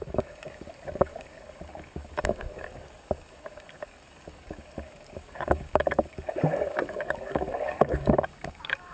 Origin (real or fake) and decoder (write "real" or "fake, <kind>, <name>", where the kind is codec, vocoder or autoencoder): fake, codec, DAC